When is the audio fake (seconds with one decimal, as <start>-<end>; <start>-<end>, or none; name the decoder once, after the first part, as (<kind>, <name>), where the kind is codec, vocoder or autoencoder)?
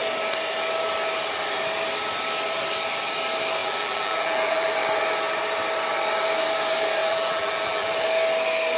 3.6-4.7 (vocoder, BigVGAN v2); 7.0-7.9